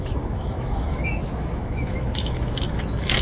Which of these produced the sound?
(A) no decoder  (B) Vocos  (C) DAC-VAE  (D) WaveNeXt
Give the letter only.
C